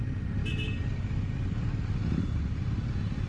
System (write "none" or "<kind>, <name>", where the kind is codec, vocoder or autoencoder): none